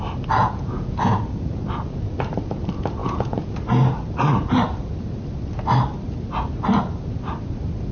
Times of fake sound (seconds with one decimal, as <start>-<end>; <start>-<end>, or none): 0.4-1.2; 3.0-3.5